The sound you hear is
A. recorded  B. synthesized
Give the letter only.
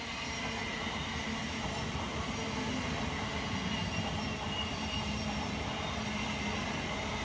A